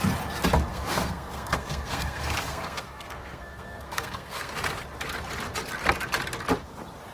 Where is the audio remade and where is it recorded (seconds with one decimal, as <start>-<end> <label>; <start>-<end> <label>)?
0.0-0.7 recorded; 0.7-4.5 remade; 4.5-7.1 recorded